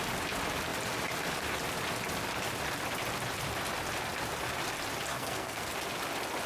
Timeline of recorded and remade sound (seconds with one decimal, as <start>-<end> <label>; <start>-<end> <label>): 0.0-5.1 recorded; 5.1-5.7 remade; 5.7-6.5 recorded